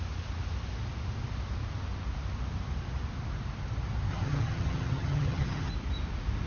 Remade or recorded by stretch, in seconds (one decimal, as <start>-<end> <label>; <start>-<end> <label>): 0.0-4.1 recorded; 4.1-5.7 remade; 5.7-6.5 recorded